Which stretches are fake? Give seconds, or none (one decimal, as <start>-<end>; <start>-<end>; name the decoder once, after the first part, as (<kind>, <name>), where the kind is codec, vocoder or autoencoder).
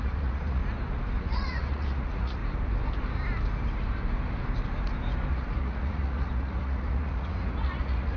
0.0-0.6 (vocoder, Vocos); 1.2-2.4; 5.3-8.2